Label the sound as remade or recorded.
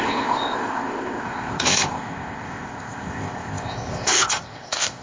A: remade